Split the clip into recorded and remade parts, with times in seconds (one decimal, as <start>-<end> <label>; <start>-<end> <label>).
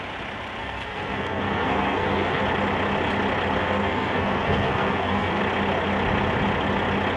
0.0-0.6 recorded; 0.6-2.4 remade; 2.4-3.6 recorded; 3.6-5.4 remade; 5.4-7.2 recorded